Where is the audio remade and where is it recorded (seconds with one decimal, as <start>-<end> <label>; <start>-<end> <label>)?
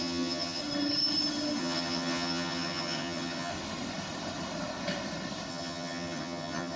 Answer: 0.0-0.6 remade; 0.6-1.6 recorded; 1.6-3.5 remade; 3.5-5.5 recorded; 5.5-6.8 remade